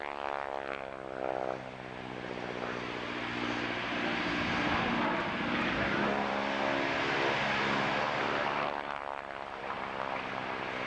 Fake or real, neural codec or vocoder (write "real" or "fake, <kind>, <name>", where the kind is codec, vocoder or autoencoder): real